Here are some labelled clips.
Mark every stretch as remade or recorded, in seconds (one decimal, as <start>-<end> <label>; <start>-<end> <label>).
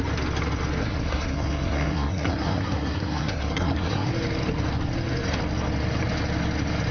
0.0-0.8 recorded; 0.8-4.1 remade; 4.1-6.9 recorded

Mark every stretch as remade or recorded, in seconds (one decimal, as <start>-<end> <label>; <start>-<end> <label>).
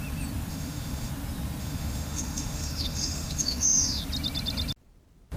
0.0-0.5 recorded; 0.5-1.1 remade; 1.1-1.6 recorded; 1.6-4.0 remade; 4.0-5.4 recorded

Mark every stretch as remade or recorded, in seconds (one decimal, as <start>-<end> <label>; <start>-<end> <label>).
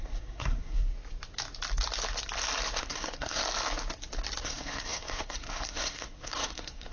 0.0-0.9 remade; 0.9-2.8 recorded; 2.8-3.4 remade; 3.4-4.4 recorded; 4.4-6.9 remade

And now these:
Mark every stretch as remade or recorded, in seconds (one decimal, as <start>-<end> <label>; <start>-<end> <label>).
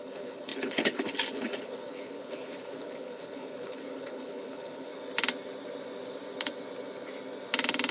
0.0-4.9 remade; 4.9-7.9 recorded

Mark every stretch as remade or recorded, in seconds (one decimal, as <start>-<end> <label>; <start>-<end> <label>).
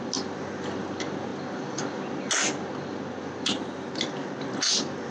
0.0-5.1 recorded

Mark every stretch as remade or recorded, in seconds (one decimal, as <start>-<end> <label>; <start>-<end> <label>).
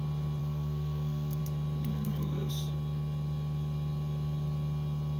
0.0-0.4 recorded; 0.4-1.4 remade; 1.4-1.9 recorded; 1.9-2.5 remade; 2.5-5.2 recorded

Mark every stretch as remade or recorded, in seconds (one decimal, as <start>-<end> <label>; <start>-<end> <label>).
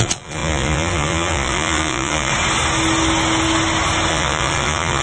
0.0-2.3 remade; 2.3-4.1 recorded; 4.1-5.0 remade